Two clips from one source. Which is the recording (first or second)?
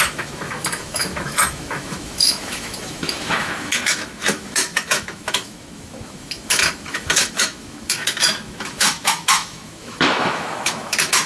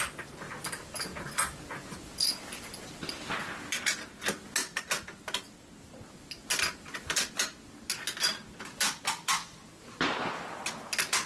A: second